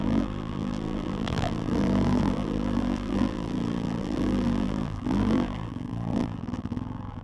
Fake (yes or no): yes